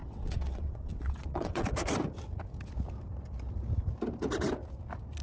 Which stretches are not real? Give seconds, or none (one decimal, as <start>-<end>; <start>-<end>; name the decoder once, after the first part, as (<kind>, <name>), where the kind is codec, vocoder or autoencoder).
0.0-1.7 (vocoder, WaveNeXt)